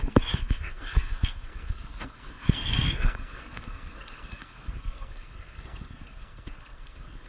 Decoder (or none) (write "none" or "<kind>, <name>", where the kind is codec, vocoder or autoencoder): codec, SNAC